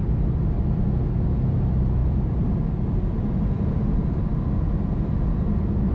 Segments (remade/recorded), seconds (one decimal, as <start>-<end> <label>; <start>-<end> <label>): 0.0-5.9 recorded